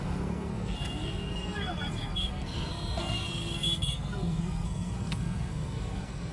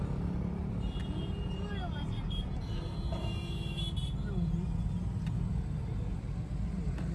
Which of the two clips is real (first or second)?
second